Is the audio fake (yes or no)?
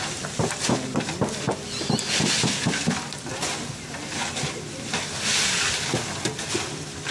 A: no